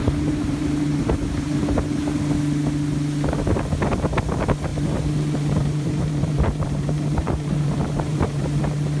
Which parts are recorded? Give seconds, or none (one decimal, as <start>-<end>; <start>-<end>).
1.8-4.7; 8.6-9.0